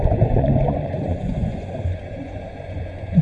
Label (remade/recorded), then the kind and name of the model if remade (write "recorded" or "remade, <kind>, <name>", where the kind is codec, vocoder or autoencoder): remade, vocoder, Vocos